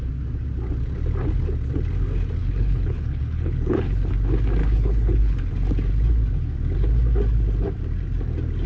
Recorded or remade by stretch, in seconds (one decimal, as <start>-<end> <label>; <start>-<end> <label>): 0.0-2.4 recorded; 2.4-4.1 remade; 4.1-4.6 recorded; 4.6-5.5 remade; 5.5-8.7 recorded